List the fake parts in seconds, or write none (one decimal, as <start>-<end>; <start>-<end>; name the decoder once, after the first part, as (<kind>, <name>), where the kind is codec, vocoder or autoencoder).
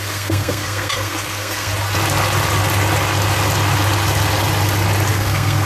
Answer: 0.0-1.7 (codec, SNAC); 5.1-5.7